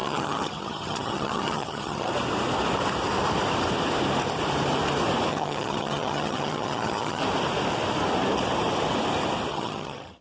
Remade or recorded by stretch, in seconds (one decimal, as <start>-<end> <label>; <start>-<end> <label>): 0.0-2.1 remade; 2.1-5.3 recorded; 5.3-7.2 remade; 7.2-9.5 recorded; 9.5-10.2 remade